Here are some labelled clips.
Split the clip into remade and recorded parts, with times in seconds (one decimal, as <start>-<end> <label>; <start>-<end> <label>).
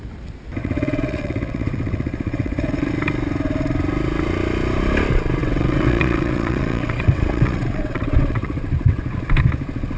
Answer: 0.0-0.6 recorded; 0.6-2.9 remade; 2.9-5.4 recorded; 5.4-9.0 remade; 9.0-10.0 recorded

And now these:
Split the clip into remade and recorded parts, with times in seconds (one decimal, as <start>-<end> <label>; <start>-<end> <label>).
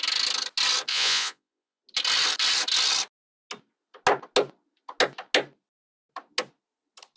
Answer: 0.0-0.9 recorded; 0.9-1.8 remade; 1.8-7.2 recorded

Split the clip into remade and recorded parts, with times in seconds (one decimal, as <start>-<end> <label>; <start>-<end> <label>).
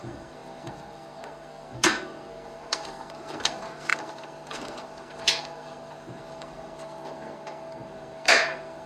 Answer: 0.0-8.9 remade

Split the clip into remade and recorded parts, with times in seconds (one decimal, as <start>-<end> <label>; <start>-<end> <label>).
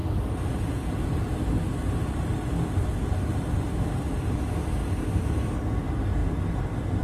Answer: 0.0-7.0 recorded